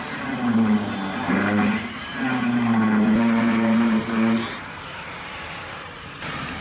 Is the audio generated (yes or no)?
yes